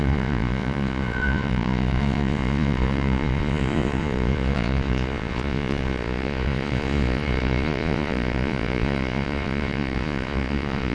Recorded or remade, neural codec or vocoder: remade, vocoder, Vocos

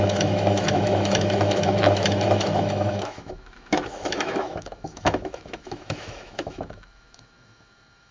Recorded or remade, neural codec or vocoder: remade, autoencoder, DAC-VAE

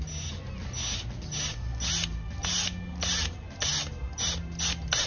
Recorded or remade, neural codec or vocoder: recorded